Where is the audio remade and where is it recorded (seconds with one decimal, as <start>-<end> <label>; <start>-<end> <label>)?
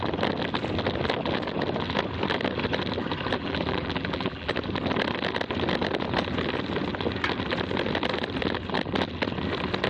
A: 0.0-3.4 recorded; 3.4-4.5 remade; 4.5-9.9 recorded